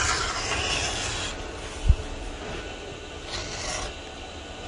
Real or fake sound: real